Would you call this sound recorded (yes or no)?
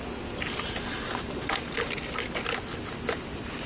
yes